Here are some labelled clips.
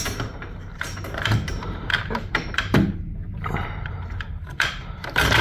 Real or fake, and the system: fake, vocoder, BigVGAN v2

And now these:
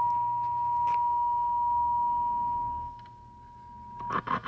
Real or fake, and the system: real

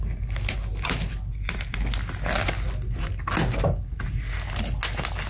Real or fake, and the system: real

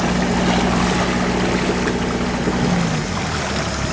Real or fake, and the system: real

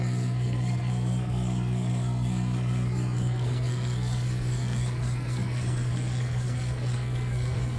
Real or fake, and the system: fake, codec, SNAC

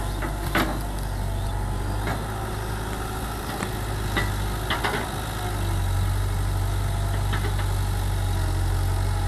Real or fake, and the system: real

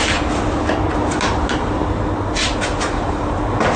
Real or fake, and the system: real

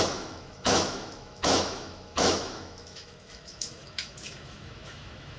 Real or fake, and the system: fake, autoencoder, DAC-VAE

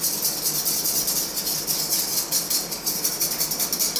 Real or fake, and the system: real